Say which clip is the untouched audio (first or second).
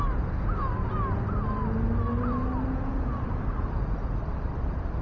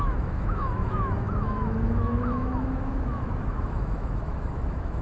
first